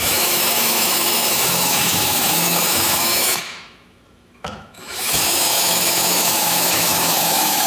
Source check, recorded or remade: remade